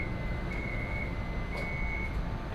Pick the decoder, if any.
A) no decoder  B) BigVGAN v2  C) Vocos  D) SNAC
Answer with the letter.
A